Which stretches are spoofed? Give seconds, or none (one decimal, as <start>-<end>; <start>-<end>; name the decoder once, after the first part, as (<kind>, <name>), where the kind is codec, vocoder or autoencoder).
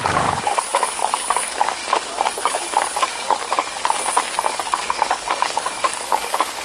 0.0-1.8 (codec, DAC); 2.3-3.8; 4.5-6.6